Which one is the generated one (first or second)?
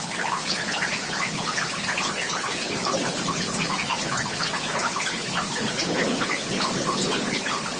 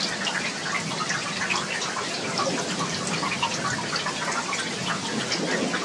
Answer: first